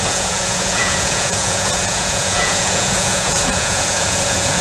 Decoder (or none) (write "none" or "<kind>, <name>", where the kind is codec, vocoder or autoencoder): vocoder, Vocos